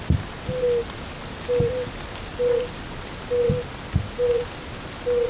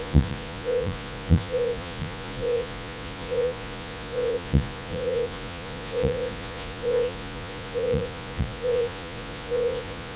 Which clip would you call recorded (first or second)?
first